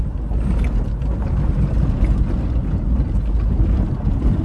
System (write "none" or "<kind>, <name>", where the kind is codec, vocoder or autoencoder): none